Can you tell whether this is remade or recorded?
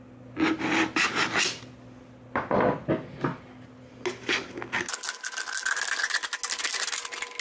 recorded